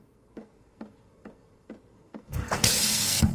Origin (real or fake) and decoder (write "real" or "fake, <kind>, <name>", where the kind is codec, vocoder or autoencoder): fake, codec, SNAC